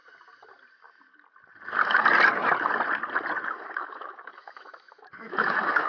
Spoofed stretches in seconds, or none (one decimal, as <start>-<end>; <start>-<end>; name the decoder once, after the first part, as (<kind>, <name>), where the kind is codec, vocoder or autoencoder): 3.5-5.9 (autoencoder, DAC-VAE)